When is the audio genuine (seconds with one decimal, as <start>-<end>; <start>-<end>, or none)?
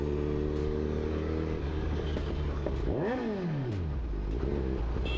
0.0-0.6; 3.7-5.2